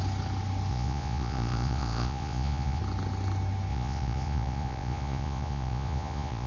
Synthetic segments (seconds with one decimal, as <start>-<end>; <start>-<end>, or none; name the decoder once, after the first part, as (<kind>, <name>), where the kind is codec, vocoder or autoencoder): 0.7-2.8 (vocoder, Vocos); 3.7-6.5